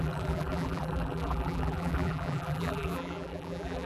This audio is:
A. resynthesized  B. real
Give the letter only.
A